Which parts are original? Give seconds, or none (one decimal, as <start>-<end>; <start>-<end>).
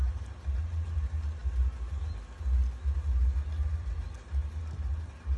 0.0-5.4